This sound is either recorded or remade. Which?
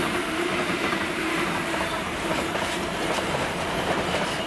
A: remade